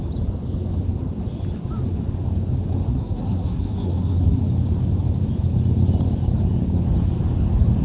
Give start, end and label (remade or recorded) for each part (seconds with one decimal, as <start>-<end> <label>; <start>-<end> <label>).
0.0-2.9 recorded; 2.9-4.4 remade; 4.4-7.8 recorded